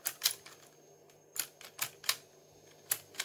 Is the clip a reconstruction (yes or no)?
no